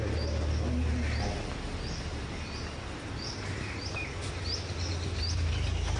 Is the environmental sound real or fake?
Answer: real